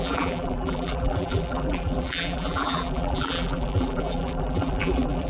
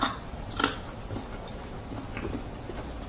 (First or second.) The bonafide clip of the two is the second